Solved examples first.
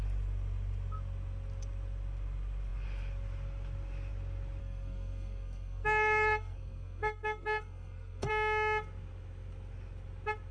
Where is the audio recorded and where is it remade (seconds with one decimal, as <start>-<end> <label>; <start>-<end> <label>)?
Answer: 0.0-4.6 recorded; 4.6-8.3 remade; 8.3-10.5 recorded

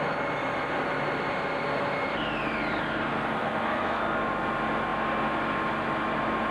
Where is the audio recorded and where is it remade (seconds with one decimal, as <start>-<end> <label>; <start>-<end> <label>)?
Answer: 0.0-3.1 recorded; 3.1-4.0 remade; 4.0-6.5 recorded

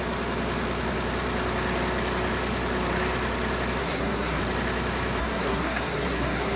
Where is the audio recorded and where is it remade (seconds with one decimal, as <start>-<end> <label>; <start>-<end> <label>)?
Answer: 0.0-3.8 recorded; 3.8-4.4 remade; 4.4-5.2 recorded; 5.2-6.6 remade

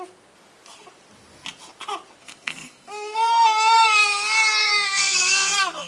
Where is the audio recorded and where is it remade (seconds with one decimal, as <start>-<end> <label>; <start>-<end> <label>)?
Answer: 0.0-2.2 recorded; 2.2-4.0 remade; 4.0-4.6 recorded; 4.6-5.9 remade

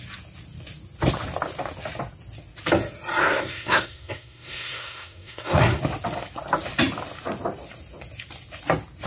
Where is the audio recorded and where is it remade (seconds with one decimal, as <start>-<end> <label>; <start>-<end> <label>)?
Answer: 0.0-3.2 recorded; 3.2-5.8 remade; 5.8-9.1 recorded

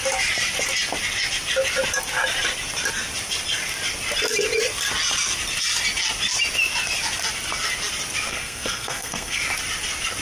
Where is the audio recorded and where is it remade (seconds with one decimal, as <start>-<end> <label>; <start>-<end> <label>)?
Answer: 0.0-8.3 recorded; 8.3-9.4 remade; 9.4-10.2 recorded